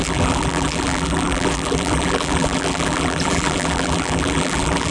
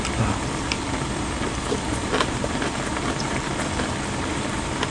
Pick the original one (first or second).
second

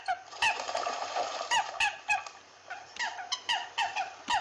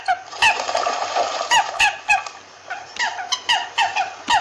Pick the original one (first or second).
second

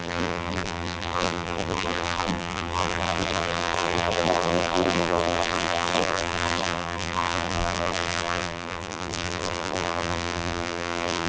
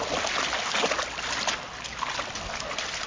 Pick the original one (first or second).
second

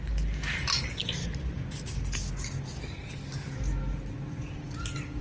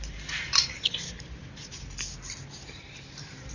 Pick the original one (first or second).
first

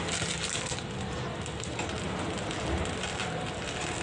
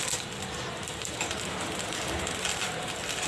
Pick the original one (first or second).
first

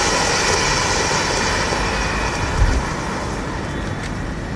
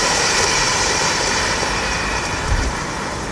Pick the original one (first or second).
first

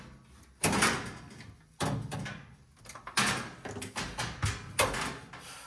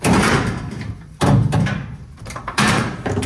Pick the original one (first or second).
first